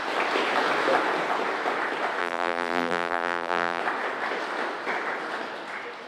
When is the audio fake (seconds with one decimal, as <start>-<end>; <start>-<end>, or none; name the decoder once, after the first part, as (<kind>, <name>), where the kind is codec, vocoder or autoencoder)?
2.2-3.8 (vocoder, BigVGAN v2)